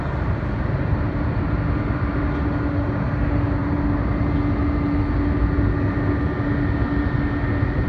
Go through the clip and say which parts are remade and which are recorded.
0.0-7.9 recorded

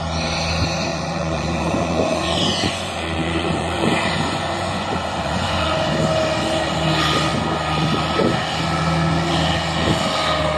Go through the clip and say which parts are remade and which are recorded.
0.0-0.9 recorded; 0.9-5.9 remade; 5.9-10.6 recorded